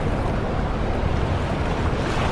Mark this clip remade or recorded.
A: recorded